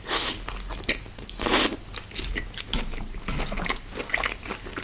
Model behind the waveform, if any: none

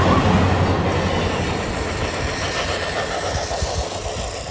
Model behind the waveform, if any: none